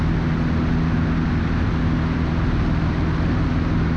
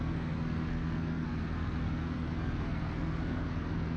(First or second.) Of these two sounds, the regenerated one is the second